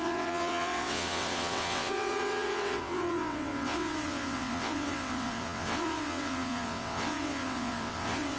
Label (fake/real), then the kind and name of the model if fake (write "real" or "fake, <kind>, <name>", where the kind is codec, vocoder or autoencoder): fake, vocoder, WaveNeXt